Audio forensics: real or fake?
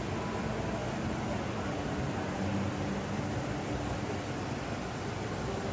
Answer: real